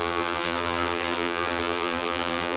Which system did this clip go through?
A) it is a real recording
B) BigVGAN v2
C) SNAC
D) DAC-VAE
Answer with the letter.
B